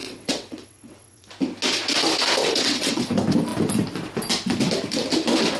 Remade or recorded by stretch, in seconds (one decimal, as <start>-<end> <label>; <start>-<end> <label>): 0.0-1.3 remade; 1.3-2.4 recorded; 2.4-3.0 remade; 3.0-5.6 recorded